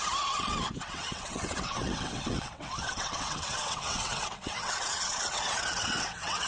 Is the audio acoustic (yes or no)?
no